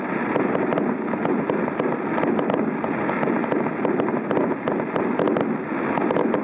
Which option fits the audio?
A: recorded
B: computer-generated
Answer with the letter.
A